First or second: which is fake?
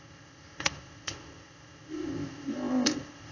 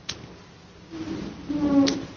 first